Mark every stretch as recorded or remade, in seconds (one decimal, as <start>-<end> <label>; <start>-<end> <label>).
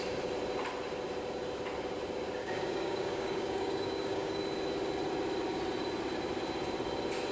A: 0.0-2.4 recorded; 2.4-4.4 remade; 4.4-7.3 recorded